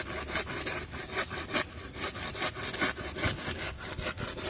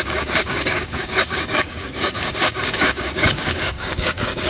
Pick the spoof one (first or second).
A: second